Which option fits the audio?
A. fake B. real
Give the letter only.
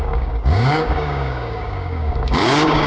A